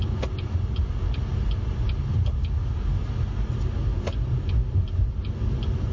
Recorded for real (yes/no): yes